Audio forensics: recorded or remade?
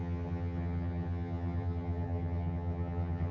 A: remade